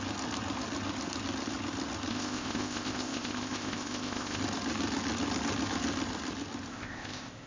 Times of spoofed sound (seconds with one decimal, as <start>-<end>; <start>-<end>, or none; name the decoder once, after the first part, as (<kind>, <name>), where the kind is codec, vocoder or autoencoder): 2.1-4.4 (codec, ZipCodec); 6.7-7.5